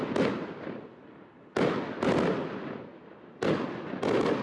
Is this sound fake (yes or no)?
no